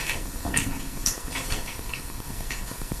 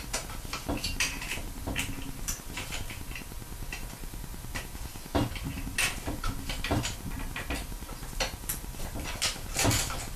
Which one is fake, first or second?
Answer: first